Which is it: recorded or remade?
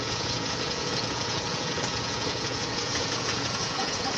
remade